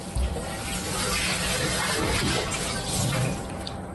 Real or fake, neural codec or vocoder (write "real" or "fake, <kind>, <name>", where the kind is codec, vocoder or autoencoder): real